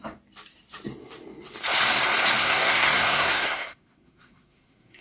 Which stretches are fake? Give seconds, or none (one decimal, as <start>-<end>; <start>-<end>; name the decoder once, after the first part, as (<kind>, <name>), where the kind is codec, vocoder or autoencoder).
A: 2.4-5.0 (codec, SNAC)

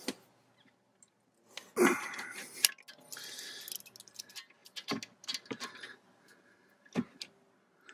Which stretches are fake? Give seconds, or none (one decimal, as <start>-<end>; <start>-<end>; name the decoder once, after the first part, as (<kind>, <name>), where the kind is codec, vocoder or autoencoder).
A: none

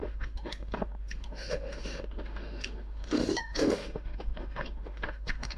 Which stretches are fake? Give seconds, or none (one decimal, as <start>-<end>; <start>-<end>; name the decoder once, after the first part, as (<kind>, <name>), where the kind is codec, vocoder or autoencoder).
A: 0.0-5.6 (autoencoder, DAC-VAE)

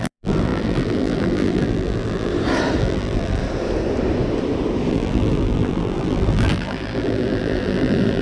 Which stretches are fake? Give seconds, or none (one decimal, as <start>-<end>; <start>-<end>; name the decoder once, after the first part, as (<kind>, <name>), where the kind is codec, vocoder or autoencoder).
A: 0.0-2.3 (vocoder, BigVGAN v2); 2.8-3.4; 4.9-8.2

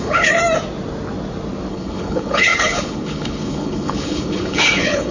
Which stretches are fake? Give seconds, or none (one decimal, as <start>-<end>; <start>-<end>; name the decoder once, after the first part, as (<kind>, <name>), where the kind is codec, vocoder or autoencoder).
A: 0.0-0.4 (codec, HILCodec); 1.7-5.1

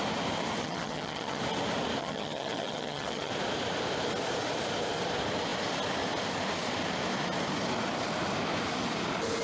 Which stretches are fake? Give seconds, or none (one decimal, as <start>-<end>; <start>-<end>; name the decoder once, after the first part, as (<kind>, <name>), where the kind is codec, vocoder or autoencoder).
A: 0.6-1.4 (vocoder, HiFi-GAN); 2.0-3.3

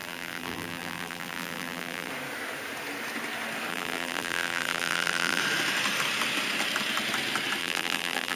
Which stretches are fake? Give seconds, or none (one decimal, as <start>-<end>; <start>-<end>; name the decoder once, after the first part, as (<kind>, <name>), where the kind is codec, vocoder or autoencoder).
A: 0.0-2.1 (vocoder, BigVGAN v2); 3.7-5.4; 7.6-8.4

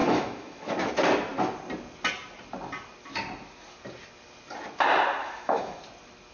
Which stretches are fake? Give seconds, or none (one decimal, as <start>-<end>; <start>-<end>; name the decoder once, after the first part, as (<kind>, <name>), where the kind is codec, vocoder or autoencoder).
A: 0.0-0.7 (autoencoder, DAC-VAE); 5.2-5.8